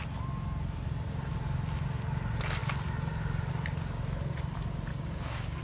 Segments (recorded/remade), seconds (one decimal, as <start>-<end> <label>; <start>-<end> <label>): 0.0-4.9 recorded; 4.9-5.6 remade